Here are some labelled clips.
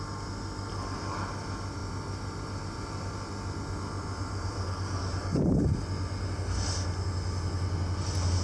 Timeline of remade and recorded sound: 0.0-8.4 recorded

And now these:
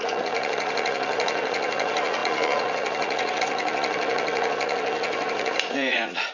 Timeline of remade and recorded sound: 0.0-6.3 remade

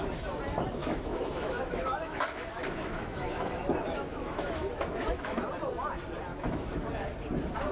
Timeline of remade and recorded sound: 0.0-0.8 recorded; 0.8-5.4 remade; 5.4-6.3 recorded; 6.3-6.9 remade; 6.9-7.7 recorded

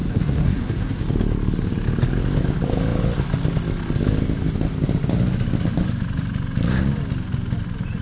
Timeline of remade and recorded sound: 0.0-1.0 remade; 1.0-8.0 recorded

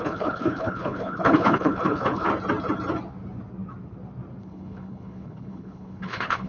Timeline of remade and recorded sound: 0.0-2.3 remade; 2.3-4.4 recorded; 4.4-6.5 remade

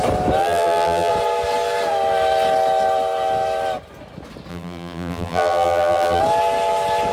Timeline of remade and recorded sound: 0.0-0.4 recorded; 0.4-1.1 remade; 1.1-4.5 recorded; 4.5-6.2 remade; 6.2-7.1 recorded

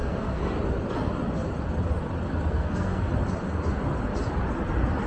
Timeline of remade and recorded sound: 0.0-0.4 remade; 0.4-2.5 recorded; 2.5-3.1 remade; 3.1-5.1 recorded

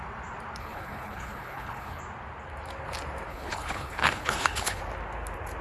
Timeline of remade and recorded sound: 0.0-0.6 recorded; 0.6-2.0 remade; 2.0-3.3 recorded; 3.3-4.8 remade; 4.8-5.6 recorded